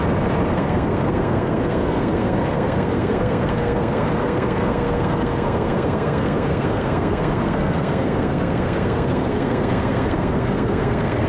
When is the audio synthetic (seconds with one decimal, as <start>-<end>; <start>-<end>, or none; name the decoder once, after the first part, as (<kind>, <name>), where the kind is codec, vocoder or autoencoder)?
0.5-11.3 (codec, SNAC)

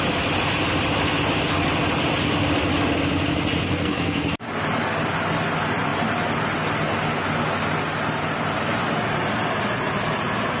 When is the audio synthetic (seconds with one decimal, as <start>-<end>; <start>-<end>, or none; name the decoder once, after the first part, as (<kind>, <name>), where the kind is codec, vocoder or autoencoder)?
3.6-4.3 (codec, SNAC)

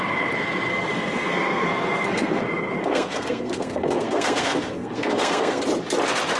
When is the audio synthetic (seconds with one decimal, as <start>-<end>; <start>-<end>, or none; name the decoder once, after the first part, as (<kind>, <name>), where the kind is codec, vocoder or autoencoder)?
0.7-2.4 (codec, SNAC); 2.8-5.6

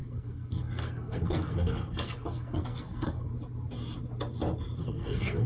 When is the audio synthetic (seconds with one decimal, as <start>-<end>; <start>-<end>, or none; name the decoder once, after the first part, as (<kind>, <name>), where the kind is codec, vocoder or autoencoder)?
0.0-3.3 (codec, SNAC); 4.8-5.5

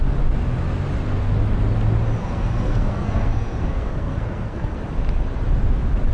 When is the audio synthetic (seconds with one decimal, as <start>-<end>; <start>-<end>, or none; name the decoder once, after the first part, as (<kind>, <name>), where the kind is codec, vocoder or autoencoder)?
2.2-4.8 (codec, SNAC)